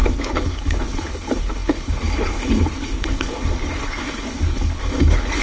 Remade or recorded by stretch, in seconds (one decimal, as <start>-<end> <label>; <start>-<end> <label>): 0.0-5.4 remade